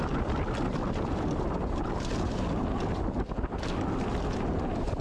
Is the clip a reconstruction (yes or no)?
no